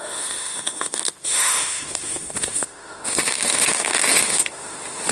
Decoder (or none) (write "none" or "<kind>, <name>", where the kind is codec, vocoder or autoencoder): autoencoder, DAC-VAE